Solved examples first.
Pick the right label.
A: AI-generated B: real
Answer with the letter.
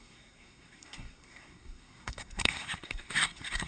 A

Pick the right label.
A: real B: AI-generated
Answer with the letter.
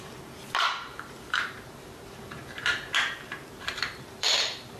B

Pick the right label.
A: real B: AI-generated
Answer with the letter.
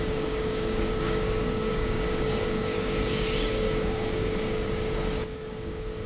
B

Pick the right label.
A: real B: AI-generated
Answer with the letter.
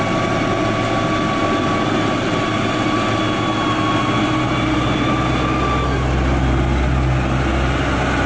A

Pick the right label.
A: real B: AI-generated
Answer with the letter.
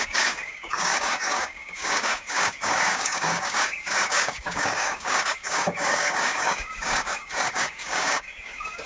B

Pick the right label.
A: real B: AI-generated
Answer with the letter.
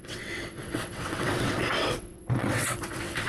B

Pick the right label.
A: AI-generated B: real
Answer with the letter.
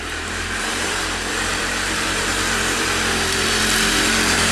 A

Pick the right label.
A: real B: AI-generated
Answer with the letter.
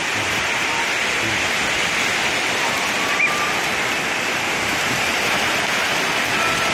B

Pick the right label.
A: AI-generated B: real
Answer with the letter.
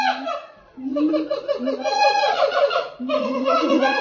A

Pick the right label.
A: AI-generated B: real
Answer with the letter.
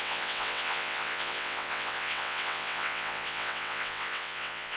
A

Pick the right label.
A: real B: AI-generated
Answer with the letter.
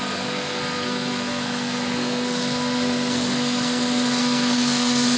B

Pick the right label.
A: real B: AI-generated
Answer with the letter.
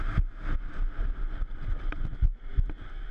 A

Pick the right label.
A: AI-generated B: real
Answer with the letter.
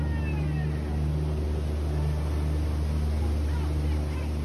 B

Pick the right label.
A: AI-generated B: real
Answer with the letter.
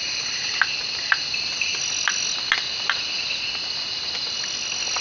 B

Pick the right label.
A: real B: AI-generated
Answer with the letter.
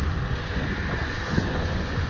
B